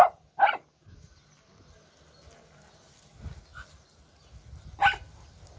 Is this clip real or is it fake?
real